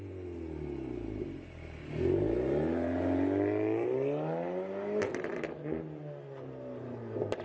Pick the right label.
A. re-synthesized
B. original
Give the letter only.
B